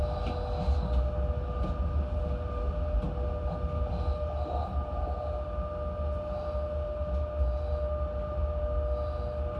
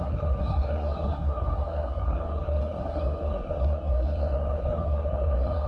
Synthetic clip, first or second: second